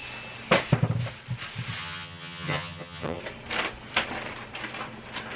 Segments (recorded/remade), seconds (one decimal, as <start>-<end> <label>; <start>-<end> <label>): 0.0-1.8 recorded; 1.8-3.2 remade; 3.2-5.4 recorded